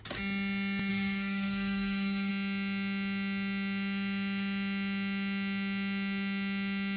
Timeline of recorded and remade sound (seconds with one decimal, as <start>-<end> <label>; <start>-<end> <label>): 0.0-0.9 recorded; 0.9-2.3 remade; 2.3-7.0 recorded